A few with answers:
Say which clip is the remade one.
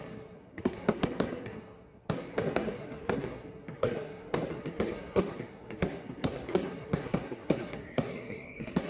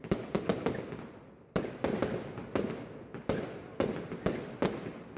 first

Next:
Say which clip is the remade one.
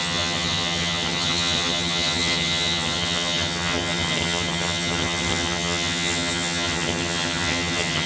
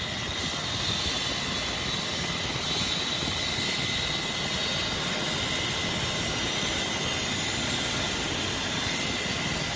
first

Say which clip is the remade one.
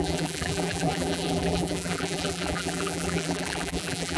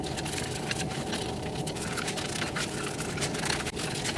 first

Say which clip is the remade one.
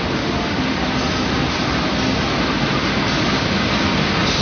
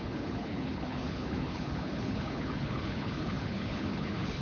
second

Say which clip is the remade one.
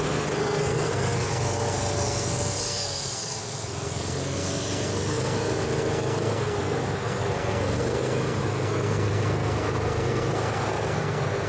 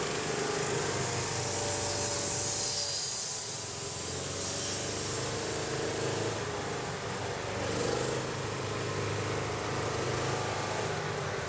first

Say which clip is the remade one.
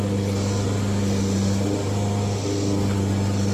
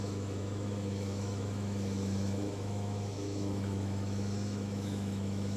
second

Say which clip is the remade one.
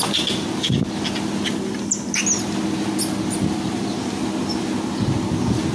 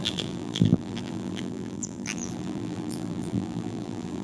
second